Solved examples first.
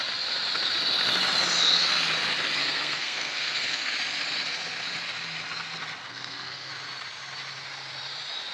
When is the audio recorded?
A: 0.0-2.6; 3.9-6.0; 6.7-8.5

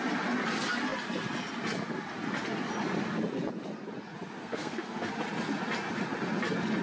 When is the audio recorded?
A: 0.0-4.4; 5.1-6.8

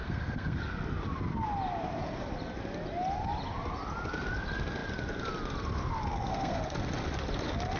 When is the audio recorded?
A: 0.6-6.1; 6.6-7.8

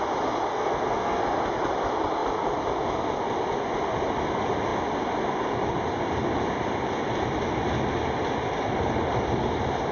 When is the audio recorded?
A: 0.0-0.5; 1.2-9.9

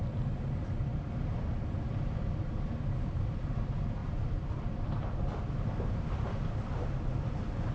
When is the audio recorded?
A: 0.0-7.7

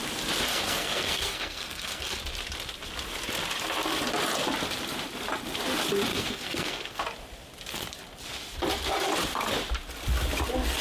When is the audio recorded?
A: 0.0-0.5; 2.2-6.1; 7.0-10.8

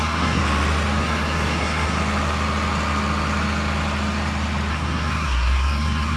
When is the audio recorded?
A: 0.4-1.0; 2.0-4.7

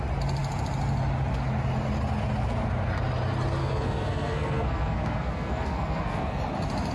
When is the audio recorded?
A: 0.0-3.6; 6.4-6.9